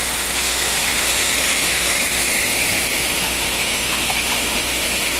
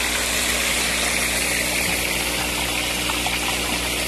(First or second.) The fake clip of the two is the first